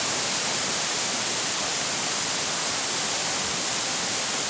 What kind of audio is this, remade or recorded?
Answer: recorded